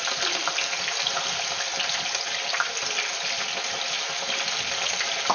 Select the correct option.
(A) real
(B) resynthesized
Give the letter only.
A